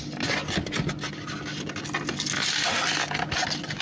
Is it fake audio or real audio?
real